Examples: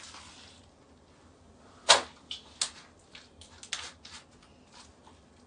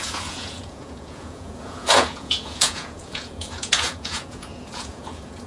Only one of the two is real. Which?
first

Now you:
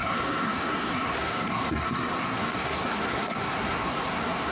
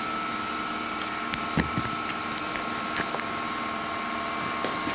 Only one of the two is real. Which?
second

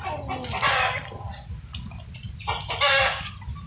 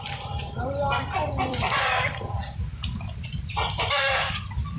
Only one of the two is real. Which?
first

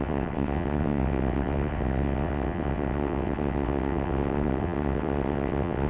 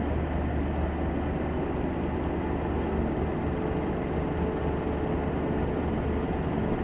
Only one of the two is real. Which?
second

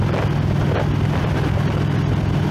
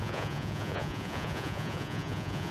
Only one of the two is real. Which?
first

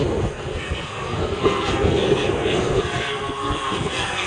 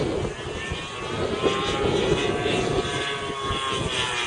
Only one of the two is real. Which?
second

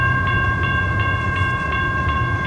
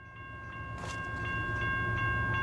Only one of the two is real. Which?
second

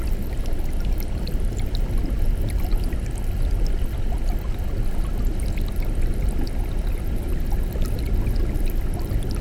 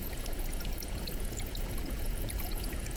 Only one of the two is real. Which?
first